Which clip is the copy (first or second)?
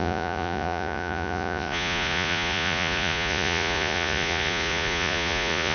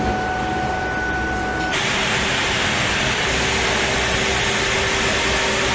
first